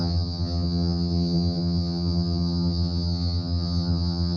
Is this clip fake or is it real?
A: fake